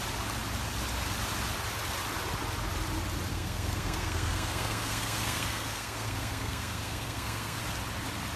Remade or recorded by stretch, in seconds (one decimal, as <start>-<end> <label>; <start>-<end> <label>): 0.0-3.3 recorded; 3.3-7.6 remade; 7.6-8.4 recorded